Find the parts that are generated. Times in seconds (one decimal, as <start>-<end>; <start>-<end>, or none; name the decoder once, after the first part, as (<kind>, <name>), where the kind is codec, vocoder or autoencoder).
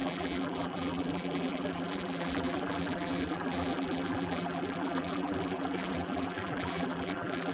0.0-7.5 (vocoder, BigVGAN v2)